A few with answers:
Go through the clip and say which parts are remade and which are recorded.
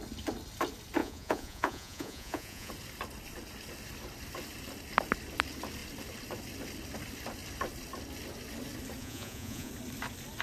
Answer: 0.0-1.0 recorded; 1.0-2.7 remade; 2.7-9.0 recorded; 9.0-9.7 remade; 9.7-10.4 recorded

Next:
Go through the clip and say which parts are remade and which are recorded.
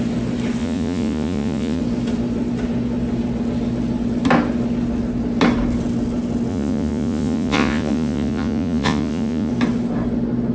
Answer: 0.0-0.6 recorded; 0.6-1.8 remade; 1.8-6.5 recorded; 6.5-9.5 remade; 9.5-10.5 recorded